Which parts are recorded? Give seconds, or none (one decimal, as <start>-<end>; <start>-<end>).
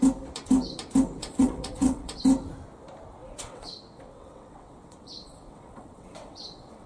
0.0-1.2; 2.2-3.2